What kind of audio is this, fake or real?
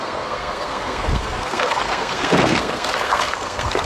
fake